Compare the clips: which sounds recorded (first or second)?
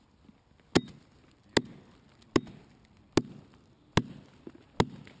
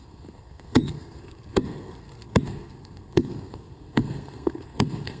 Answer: first